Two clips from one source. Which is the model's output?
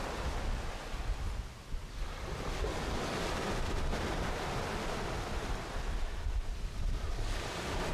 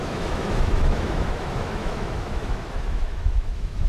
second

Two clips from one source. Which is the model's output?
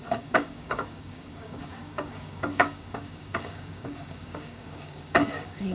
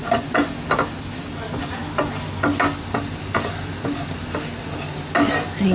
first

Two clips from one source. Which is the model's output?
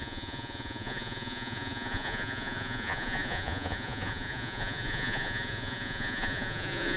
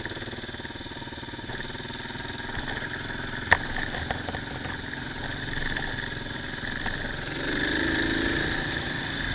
first